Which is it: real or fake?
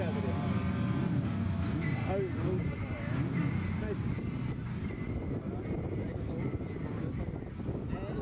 real